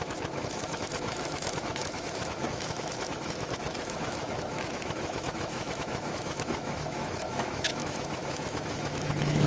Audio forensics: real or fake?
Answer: fake